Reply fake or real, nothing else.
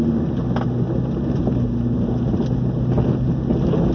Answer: real